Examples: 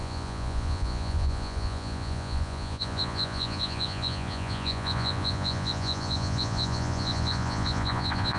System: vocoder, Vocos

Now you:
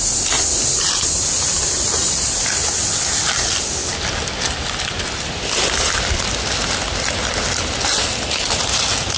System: none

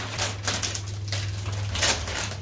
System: none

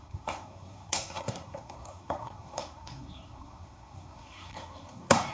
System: codec, SNAC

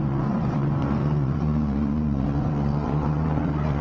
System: vocoder, Vocos